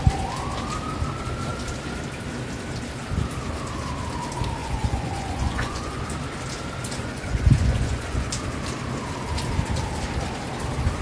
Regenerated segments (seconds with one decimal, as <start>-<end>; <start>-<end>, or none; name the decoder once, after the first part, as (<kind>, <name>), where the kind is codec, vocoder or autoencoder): 4.6-6.0 (vocoder, Vocos); 7.0-8.3